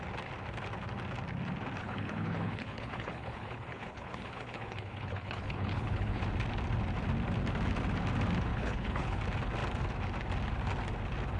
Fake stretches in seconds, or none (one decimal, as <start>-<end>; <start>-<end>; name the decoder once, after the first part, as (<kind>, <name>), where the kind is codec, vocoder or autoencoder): 1.8-6.2 (codec, HILCodec); 8.5-9.2